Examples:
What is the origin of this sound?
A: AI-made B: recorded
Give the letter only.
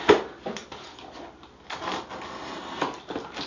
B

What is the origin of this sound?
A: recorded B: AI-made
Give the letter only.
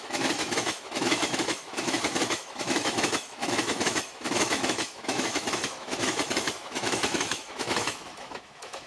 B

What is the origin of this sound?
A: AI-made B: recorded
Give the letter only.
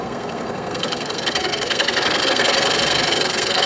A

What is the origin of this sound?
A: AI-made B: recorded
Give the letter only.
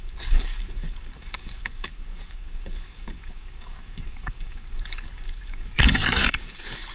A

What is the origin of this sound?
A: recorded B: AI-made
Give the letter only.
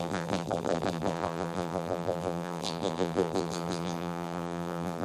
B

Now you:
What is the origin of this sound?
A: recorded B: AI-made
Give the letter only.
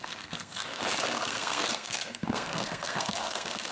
B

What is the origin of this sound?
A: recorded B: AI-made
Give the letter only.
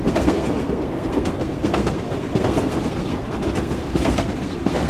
B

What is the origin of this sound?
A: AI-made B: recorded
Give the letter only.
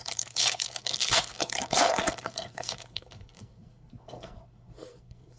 A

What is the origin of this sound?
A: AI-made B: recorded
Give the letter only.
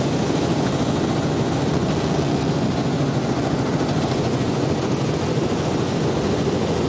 A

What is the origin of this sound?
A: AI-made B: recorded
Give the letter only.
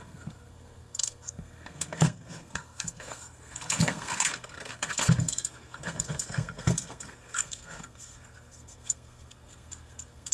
A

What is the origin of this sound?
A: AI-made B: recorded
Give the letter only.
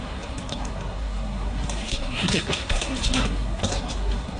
A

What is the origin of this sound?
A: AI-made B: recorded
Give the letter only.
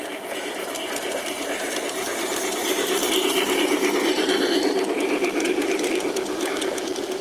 A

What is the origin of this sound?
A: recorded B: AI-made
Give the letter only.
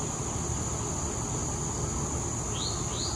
A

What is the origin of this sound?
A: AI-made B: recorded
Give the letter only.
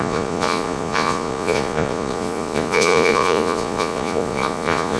A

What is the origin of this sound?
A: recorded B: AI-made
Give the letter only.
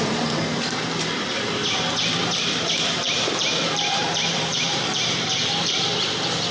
B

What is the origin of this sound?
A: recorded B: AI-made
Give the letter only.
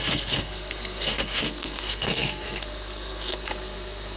B